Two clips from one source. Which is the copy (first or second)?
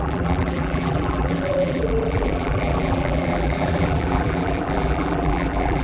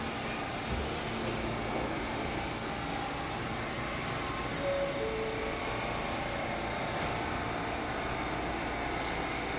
first